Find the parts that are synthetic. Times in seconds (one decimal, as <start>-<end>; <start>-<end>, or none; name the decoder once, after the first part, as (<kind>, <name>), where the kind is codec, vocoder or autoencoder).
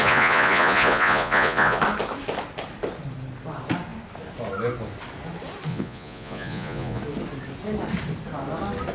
0.0-1.8 (vocoder, Vocos); 5.7-7.0